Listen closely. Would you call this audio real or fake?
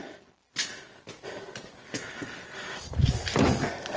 real